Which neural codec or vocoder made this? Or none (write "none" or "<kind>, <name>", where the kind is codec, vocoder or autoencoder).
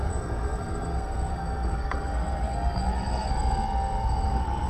codec, SNAC